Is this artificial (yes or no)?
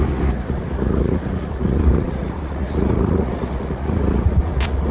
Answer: yes